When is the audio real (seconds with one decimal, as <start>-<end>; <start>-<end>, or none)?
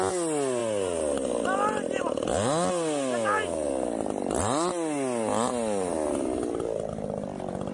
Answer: 0.0-7.7